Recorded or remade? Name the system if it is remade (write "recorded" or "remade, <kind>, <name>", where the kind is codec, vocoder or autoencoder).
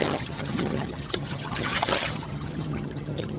remade, vocoder, HiFi-GAN